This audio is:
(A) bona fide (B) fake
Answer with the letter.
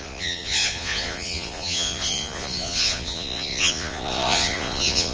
B